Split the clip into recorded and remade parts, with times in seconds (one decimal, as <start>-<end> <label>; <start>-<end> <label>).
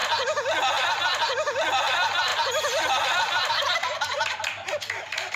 0.0-5.4 recorded